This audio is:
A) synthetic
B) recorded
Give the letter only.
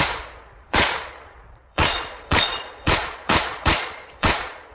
A